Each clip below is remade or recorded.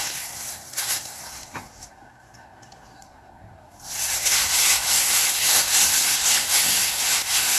remade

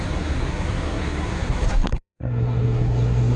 remade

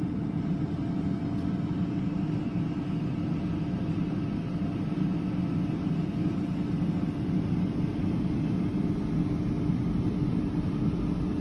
recorded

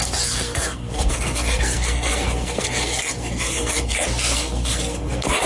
remade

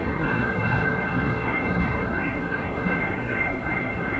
remade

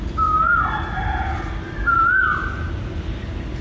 recorded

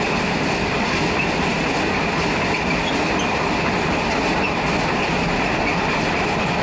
recorded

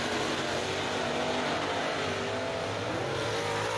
recorded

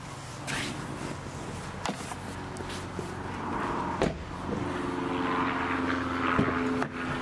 recorded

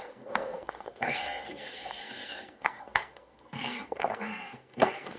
remade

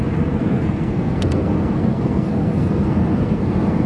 remade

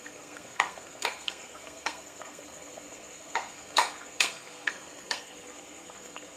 remade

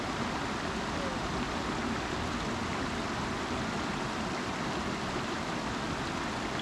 recorded